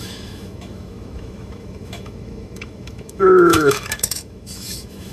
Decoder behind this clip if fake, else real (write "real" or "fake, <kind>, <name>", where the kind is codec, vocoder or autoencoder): fake, autoencoder, DAC-VAE